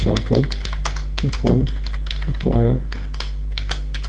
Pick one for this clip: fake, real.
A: fake